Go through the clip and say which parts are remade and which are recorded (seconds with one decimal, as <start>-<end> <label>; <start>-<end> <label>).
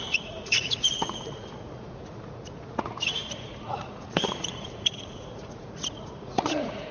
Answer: 0.0-6.9 remade